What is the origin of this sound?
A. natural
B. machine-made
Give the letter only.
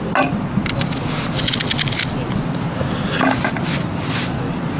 A